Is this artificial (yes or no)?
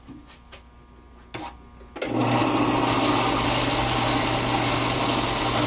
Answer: no